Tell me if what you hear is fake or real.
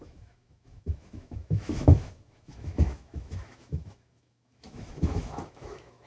fake